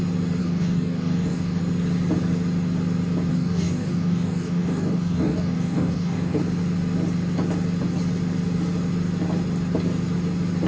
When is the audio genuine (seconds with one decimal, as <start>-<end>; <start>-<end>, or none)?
0.0-0.4; 1.6-3.3; 6.4-10.7